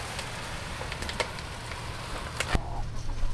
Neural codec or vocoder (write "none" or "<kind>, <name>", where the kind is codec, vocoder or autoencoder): none